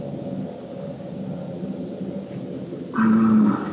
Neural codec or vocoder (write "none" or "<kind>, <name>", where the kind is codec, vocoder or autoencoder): none